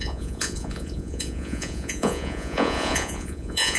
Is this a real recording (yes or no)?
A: no